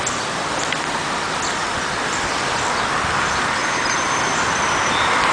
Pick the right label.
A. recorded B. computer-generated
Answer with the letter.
A